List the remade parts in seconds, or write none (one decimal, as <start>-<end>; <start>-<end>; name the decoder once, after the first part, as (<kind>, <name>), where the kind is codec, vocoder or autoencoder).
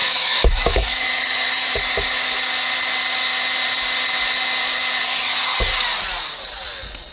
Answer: 0.0-1.1 (autoencoder, DAC-VAE)